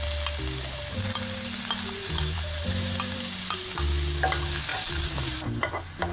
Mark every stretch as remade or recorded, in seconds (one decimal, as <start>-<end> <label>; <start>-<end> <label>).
0.0-2.0 recorded; 2.0-3.2 remade; 3.2-4.7 recorded; 4.7-5.6 remade; 5.6-6.1 recorded